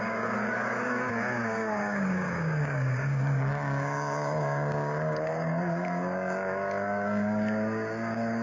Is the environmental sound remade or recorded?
remade